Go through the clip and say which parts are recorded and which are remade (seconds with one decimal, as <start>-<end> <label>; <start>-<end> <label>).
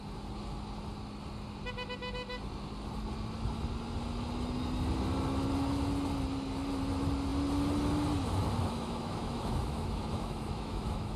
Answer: 0.0-8.6 recorded; 8.6-11.2 remade